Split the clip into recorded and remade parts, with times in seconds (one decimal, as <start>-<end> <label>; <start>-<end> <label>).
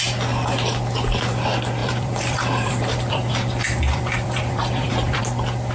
0.0-1.8 recorded; 1.8-5.2 remade; 5.2-5.7 recorded